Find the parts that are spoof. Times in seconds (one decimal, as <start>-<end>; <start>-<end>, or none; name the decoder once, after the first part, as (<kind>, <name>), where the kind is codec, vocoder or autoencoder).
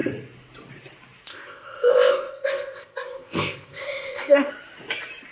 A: 1.3-4.5 (codec, ZipCodec)